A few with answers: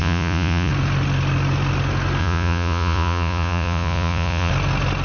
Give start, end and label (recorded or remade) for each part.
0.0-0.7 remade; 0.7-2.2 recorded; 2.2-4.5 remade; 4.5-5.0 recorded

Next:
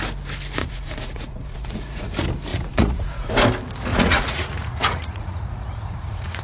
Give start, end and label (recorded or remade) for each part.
0.0-0.6 recorded; 0.6-2.1 remade; 2.1-2.5 recorded; 2.5-3.3 remade; 3.3-3.9 recorded; 3.9-6.4 remade

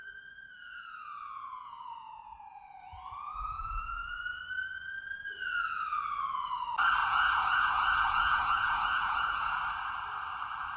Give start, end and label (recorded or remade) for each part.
0.0-4.4 remade; 4.4-7.0 recorded; 7.0-9.6 remade; 9.6-10.8 recorded